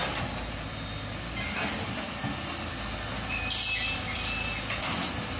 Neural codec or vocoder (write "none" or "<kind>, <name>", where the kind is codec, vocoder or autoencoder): none